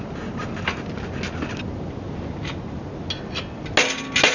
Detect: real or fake real